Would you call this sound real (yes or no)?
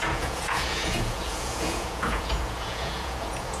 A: no